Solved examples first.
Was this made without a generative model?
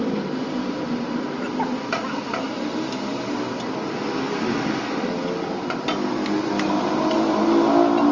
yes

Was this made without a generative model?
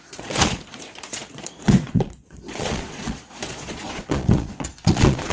no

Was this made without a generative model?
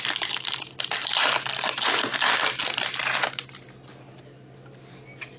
yes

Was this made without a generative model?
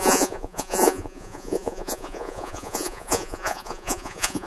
no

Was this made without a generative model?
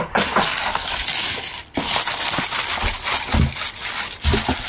yes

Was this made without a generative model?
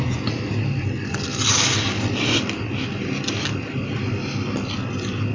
yes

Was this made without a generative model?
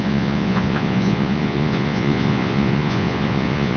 no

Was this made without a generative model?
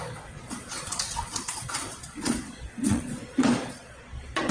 no